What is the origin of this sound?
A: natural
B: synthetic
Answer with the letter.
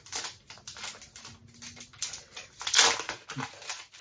A